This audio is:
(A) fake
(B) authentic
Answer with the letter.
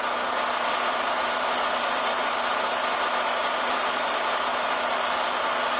B